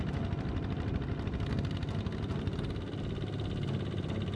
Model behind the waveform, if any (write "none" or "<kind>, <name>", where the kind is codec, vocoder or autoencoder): none